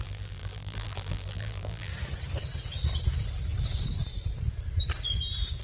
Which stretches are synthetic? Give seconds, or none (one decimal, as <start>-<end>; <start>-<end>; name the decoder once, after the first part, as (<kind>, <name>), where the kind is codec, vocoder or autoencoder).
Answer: 0.0-1.9 (vocoder, BigVGAN v2)